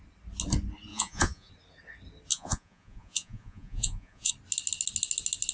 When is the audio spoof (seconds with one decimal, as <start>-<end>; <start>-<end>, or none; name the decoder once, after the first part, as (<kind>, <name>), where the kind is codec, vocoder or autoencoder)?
0.9-1.5 (vocoder, Vocos); 2.3-4.3